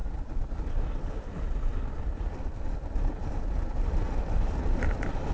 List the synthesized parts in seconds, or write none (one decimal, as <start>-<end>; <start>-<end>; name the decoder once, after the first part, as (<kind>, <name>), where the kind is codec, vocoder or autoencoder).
1.7-5.3 (vocoder, BigVGAN v2)